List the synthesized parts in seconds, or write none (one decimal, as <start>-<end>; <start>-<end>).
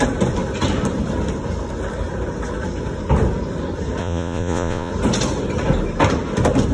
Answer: 4.0-4.9